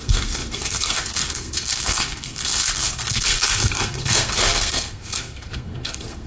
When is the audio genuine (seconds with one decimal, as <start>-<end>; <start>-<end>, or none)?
none